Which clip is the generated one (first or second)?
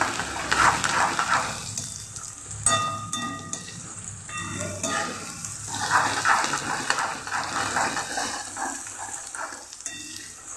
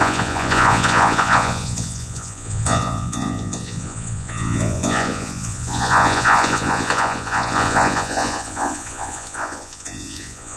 second